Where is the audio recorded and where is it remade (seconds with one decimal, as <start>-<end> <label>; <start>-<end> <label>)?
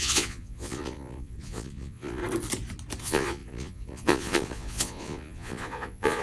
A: 0.0-2.2 remade; 2.2-3.0 recorded; 3.0-6.2 remade